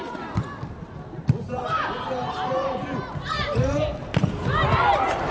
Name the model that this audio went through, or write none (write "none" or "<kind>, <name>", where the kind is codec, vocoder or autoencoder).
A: none